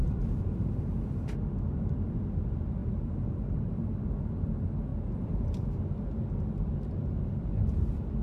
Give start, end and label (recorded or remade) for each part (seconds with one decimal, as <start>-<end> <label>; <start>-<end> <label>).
0.0-2.8 recorded; 2.8-3.9 remade; 3.9-4.9 recorded; 4.9-5.8 remade; 5.8-8.2 recorded